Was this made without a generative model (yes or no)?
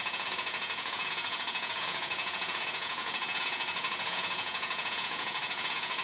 no